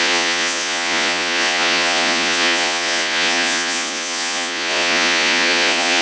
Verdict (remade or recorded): remade